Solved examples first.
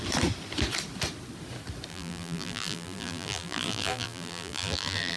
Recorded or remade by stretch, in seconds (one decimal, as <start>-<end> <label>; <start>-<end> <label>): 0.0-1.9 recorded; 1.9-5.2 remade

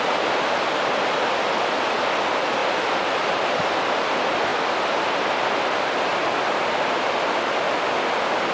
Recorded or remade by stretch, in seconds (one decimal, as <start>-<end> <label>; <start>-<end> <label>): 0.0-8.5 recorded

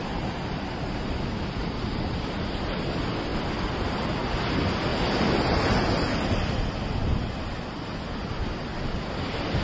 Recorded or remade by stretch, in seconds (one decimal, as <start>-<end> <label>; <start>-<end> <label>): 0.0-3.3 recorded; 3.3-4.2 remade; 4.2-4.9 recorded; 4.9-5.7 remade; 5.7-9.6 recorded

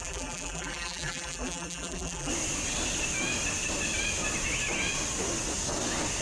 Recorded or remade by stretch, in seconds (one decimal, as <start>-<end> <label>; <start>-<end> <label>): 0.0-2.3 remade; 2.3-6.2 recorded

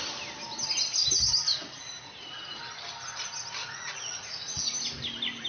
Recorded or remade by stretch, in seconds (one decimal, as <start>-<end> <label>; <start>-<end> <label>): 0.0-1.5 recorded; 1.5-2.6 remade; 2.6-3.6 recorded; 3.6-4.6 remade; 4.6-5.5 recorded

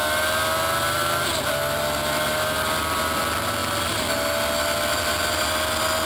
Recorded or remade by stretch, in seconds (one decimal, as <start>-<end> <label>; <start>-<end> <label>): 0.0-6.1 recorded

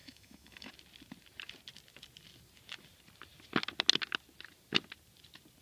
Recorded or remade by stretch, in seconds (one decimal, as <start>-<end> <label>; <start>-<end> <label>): 0.0-0.7 remade; 0.7-5.6 recorded